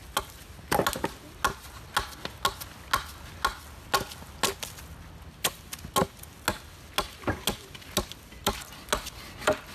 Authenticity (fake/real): real